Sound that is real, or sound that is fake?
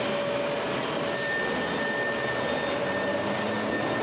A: real